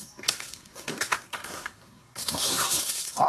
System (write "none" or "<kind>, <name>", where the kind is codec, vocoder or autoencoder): codec, SNAC